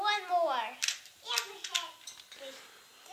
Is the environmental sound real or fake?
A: real